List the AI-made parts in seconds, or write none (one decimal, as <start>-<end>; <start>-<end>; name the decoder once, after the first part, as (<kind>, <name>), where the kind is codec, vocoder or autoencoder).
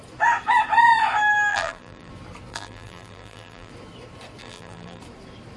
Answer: 1.5-2.1 (vocoder, BigVGAN v2); 2.5-3.7; 4.4-5.0